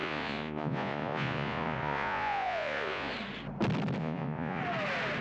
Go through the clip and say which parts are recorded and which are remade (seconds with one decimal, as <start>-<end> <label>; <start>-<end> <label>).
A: 0.0-3.1 remade; 3.1-4.0 recorded; 4.0-4.6 remade; 4.6-5.2 recorded